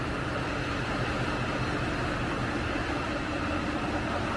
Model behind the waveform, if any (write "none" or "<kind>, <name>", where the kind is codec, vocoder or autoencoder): none